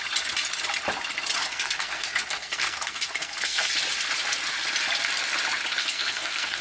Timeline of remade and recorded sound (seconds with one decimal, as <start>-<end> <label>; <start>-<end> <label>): 0.0-1.4 recorded; 1.4-3.7 remade; 3.7-5.8 recorded; 5.8-6.6 remade